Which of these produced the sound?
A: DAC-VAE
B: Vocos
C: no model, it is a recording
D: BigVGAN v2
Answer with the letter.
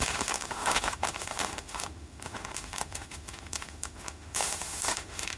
A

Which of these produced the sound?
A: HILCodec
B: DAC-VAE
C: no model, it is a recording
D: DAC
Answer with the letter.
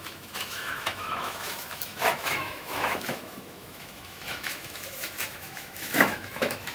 B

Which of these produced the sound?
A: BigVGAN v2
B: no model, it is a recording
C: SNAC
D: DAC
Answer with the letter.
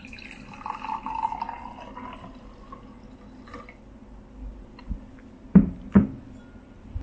B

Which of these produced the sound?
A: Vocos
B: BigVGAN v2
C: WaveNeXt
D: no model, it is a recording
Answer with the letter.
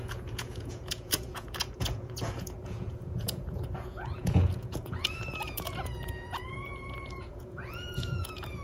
A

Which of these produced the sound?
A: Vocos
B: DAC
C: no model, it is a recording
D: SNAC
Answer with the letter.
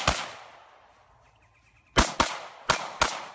C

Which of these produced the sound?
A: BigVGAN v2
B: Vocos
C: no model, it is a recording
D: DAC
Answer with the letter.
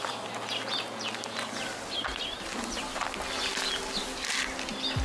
C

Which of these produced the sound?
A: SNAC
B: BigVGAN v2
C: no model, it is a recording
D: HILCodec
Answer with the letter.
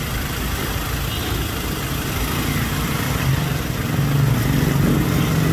C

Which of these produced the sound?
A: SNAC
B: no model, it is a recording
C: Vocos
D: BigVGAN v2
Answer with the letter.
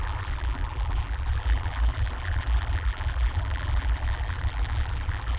D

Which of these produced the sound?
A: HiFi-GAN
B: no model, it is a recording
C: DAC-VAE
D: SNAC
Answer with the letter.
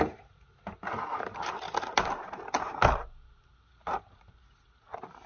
B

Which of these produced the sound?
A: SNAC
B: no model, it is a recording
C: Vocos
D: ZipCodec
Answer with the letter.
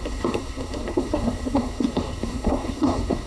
A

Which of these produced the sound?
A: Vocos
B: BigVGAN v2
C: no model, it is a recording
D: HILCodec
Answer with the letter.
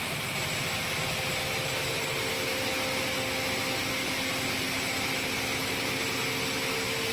C